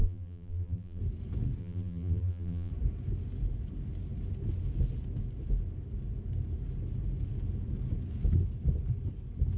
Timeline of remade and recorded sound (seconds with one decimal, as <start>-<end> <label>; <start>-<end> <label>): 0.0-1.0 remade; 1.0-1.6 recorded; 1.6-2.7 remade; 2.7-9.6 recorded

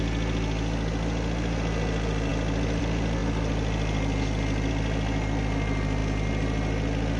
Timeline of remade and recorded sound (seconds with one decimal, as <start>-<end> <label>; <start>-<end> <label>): 0.0-7.2 recorded

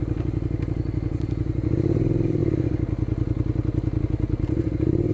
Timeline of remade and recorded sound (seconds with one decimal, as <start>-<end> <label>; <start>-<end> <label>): 0.0-2.4 remade; 2.4-4.0 recorded; 4.0-5.1 remade